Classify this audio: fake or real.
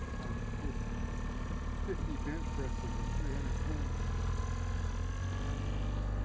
real